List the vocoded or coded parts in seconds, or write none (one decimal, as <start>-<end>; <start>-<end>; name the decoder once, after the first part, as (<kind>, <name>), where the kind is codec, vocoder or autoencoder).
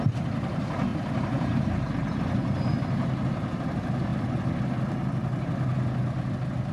0.9-1.6 (vocoder, BigVGAN v2)